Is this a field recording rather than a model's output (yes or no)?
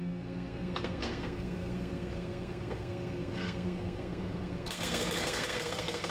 no